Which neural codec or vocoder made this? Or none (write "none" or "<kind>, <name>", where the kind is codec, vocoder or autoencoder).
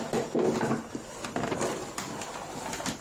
none